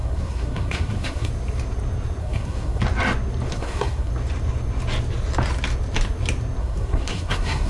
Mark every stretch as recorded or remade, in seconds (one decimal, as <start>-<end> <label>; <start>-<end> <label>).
0.0-1.3 remade; 1.3-2.2 recorded; 2.2-2.8 remade; 2.8-3.5 recorded; 3.5-4.1 remade; 4.1-6.6 recorded; 6.6-7.7 remade